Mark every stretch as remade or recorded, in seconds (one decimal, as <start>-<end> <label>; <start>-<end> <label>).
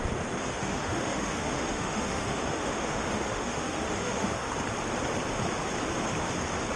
0.0-0.4 recorded; 0.4-4.5 remade; 4.5-6.8 recorded